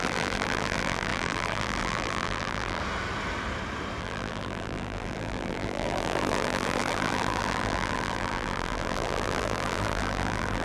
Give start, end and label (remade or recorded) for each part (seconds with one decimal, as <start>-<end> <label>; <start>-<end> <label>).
0.0-2.8 remade; 2.8-4.0 recorded; 4.0-10.6 remade